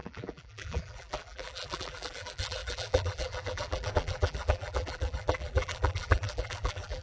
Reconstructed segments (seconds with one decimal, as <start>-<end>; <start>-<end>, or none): 0.0-7.0